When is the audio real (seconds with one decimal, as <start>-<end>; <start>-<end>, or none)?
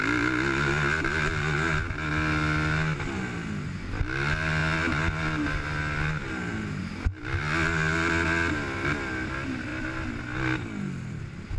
0.0-11.6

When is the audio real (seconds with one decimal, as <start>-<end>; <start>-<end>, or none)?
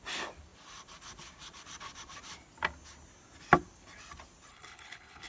0.0-4.5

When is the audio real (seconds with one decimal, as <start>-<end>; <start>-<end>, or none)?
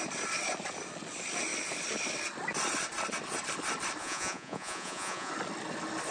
0.0-4.0; 5.3-6.1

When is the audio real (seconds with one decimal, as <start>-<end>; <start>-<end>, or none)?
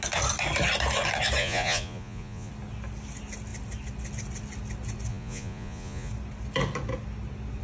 0.0-1.4; 2.5-5.1; 6.1-7.6